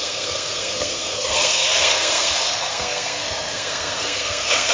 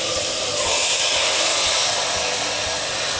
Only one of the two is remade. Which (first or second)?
first